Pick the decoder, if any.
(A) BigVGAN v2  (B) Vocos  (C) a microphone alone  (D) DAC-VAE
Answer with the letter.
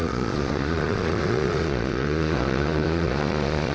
B